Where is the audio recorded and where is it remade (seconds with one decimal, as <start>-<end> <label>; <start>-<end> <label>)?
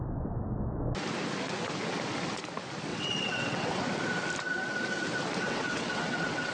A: 0.0-2.9 recorded; 2.9-3.8 remade; 3.8-5.4 recorded; 5.4-6.5 remade